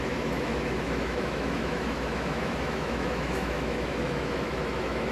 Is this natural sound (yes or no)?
no